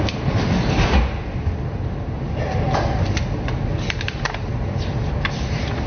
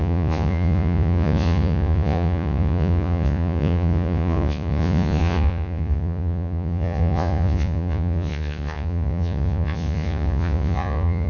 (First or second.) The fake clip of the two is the second